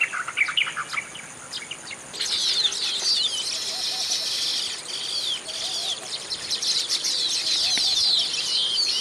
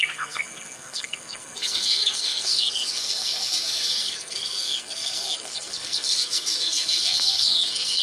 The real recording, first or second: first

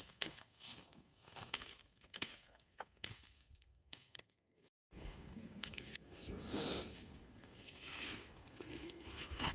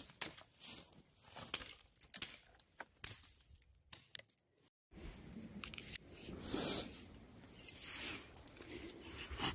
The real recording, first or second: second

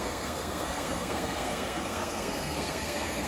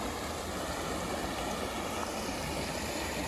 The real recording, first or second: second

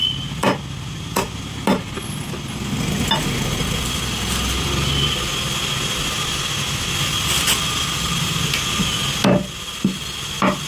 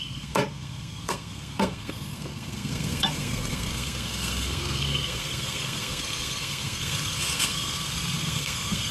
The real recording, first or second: first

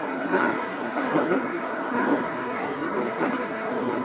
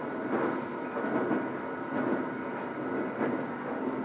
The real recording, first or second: second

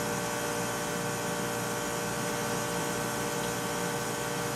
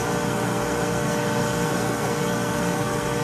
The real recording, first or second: first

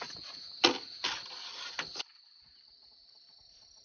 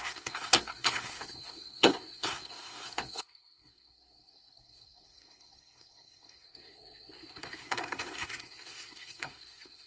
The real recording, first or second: first